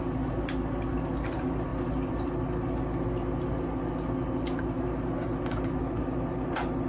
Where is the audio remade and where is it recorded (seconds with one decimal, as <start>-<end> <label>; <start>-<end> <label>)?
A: 0.0-6.9 recorded